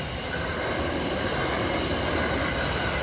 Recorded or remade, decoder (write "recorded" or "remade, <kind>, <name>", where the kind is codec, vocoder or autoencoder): recorded